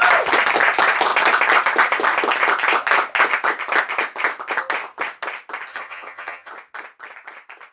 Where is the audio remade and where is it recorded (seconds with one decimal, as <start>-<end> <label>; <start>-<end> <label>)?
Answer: 0.0-5.7 recorded; 5.7-6.5 remade; 6.5-7.7 recorded